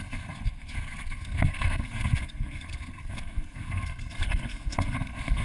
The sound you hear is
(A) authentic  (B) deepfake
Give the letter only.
B